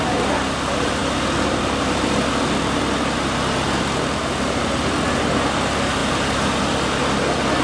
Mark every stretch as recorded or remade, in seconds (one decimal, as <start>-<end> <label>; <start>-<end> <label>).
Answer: 0.0-7.6 recorded